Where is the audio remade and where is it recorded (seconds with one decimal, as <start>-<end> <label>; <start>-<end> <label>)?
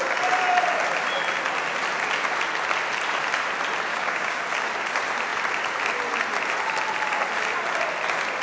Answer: 0.0-3.9 recorded; 3.9-4.4 remade; 4.4-8.4 recorded